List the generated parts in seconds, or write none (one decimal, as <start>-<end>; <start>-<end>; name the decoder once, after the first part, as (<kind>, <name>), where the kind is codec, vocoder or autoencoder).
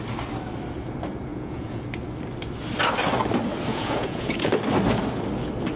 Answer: 1.3-1.8 (vocoder, Vocos); 3.7-4.5